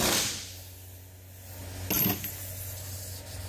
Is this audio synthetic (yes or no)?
no